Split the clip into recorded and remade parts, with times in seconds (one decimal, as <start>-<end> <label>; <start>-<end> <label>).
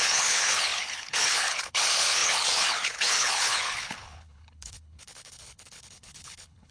0.0-6.7 remade